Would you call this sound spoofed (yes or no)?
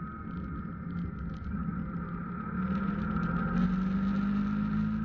no